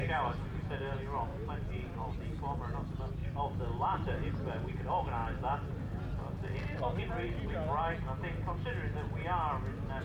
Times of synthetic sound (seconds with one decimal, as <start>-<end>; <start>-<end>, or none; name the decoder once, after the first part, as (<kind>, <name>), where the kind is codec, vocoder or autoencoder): 1.3-2.2 (vocoder, BigVGAN v2); 3.2-4.3; 5.2-7.1